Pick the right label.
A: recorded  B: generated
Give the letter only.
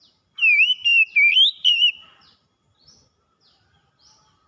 A